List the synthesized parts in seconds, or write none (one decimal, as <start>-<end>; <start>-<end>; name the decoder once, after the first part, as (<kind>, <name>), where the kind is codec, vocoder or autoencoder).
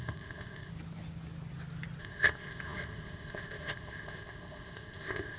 0.0-0.7 (codec, ZipCodec); 2.0-5.4